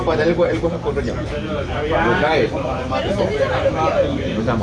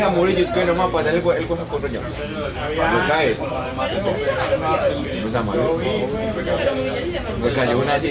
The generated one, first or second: first